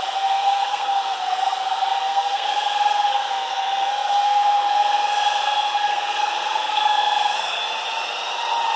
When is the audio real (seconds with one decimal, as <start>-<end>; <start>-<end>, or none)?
7.6-8.8